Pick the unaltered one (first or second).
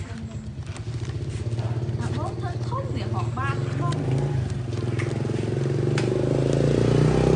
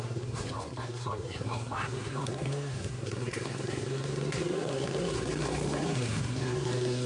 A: first